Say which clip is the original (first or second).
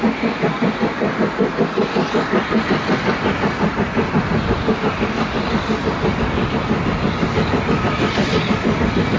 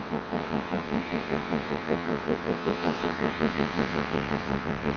first